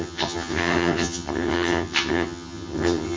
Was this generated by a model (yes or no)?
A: yes